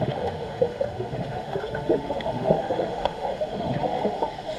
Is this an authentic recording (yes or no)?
no